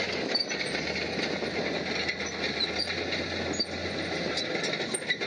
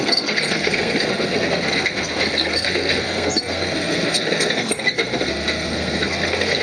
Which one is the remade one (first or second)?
second